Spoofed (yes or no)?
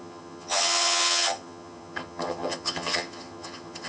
yes